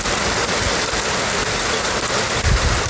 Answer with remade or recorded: recorded